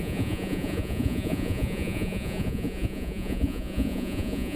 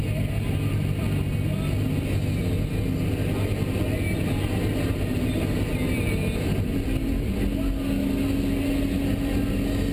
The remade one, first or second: first